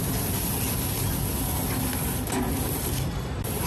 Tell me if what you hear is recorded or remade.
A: recorded